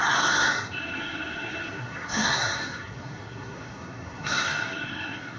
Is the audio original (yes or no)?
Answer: no